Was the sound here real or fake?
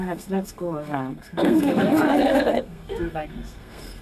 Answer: fake